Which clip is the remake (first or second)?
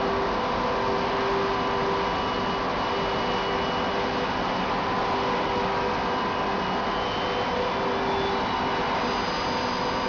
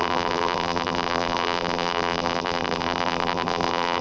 second